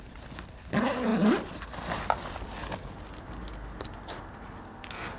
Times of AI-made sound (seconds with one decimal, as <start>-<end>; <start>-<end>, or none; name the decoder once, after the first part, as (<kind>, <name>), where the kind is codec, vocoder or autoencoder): none